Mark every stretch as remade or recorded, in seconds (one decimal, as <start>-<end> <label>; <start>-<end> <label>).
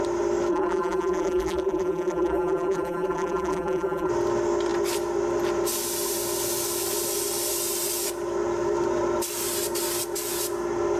0.0-0.5 recorded; 0.5-4.1 remade; 4.1-11.0 recorded